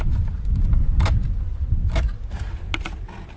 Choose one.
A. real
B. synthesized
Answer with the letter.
A